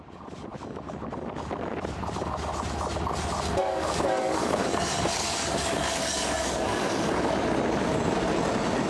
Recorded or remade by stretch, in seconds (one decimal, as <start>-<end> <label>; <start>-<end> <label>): 0.0-3.6 recorded; 3.6-7.3 remade; 7.3-8.9 recorded